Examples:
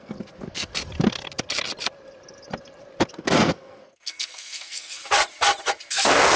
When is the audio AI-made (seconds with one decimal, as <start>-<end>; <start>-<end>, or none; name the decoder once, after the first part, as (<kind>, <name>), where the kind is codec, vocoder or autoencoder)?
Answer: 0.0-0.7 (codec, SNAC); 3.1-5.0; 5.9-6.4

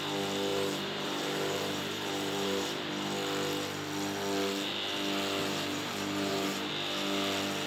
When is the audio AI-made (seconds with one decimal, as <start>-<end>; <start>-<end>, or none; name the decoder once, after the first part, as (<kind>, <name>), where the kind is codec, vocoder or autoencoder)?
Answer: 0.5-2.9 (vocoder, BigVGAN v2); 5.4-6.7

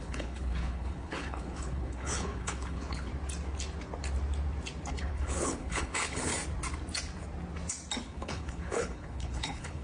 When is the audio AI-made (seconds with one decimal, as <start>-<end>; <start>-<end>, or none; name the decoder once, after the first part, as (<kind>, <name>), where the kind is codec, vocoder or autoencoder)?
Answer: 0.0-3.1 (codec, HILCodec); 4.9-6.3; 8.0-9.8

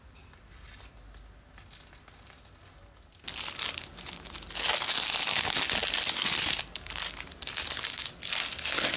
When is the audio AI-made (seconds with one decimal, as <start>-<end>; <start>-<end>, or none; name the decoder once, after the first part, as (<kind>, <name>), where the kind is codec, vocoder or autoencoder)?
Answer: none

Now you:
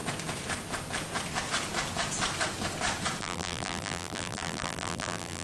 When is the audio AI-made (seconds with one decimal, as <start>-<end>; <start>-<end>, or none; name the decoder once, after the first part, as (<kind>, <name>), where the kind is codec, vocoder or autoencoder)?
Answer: 3.2-5.4 (vocoder, BigVGAN v2)

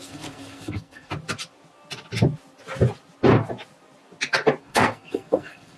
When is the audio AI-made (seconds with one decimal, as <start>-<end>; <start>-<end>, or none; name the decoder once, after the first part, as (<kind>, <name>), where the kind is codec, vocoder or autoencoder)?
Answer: 0.0-1.1 (codec, SNAC); 4.6-5.8